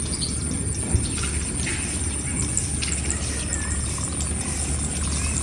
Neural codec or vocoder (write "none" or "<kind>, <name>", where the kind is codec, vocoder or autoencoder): none